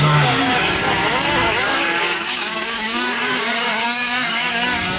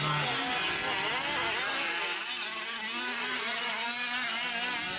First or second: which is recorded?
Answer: second